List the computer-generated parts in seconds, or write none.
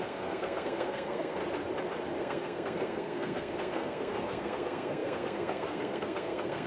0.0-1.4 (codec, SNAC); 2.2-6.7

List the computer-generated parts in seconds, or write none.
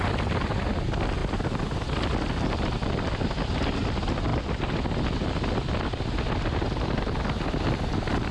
none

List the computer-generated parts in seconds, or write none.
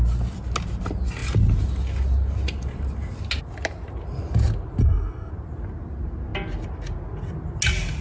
4.8-5.3 (codec, SNAC)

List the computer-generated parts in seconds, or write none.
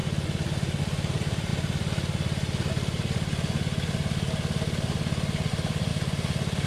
0.8-1.5 (vocoder, BigVGAN v2); 5.5-5.9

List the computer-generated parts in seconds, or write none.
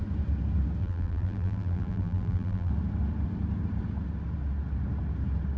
0.8-2.7 (vocoder, BigVGAN v2)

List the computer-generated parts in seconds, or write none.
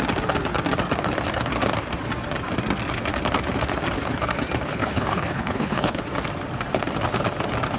4.7-6.0 (codec, HILCodec)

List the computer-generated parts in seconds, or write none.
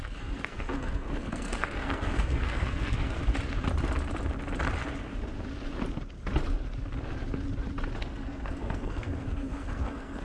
0.0-3.2 (codec, SNAC); 8.0-10.2